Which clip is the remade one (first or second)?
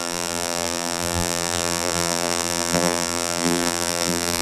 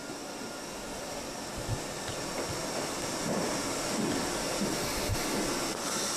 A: first